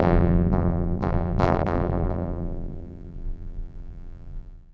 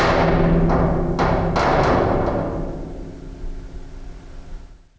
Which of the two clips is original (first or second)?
second